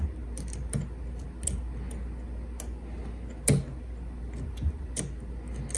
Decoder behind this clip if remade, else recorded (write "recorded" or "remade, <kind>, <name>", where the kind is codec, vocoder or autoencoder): recorded